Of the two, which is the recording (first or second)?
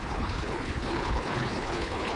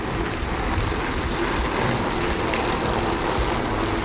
second